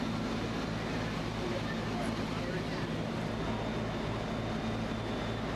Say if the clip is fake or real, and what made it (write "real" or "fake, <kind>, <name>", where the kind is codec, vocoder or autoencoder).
real